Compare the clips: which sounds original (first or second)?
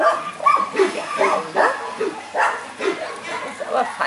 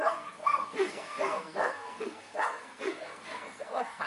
first